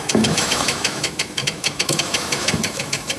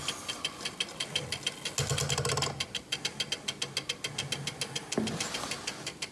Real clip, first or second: second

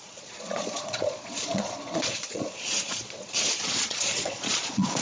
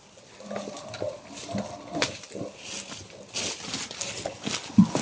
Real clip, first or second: second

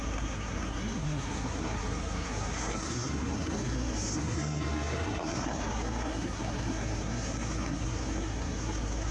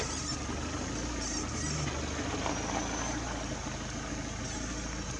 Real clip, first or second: second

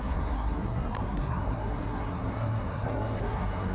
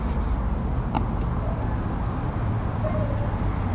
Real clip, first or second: second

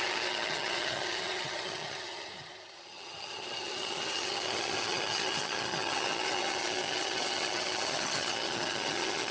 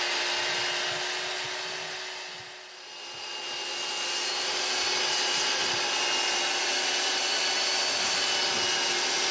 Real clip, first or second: second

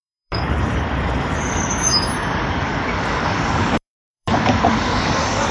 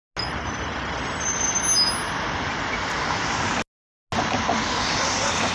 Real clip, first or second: second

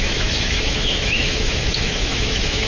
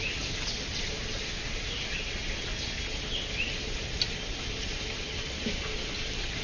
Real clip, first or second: second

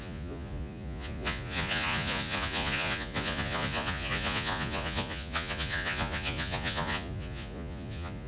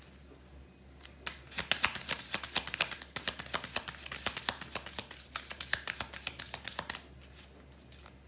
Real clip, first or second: second